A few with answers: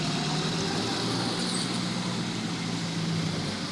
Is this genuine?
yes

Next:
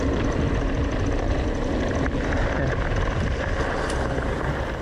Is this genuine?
yes